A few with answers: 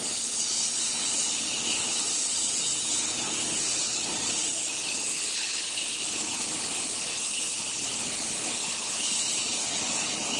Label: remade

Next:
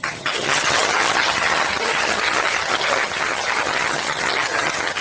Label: remade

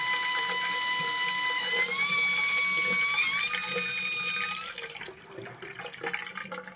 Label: recorded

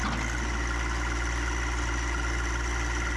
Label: recorded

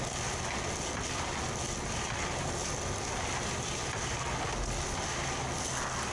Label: recorded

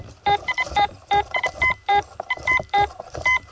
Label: remade